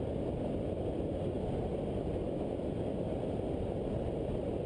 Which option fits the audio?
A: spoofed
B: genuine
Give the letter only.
B